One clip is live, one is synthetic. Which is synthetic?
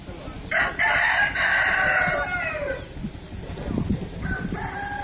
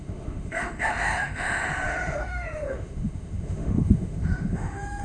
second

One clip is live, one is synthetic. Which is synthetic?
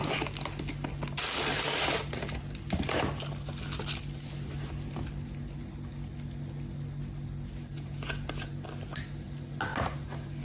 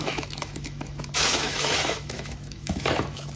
second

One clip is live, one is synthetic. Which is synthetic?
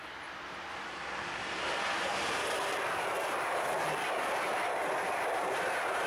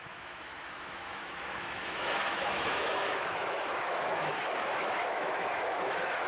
second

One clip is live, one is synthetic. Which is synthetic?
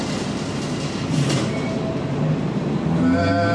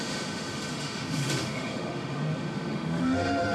second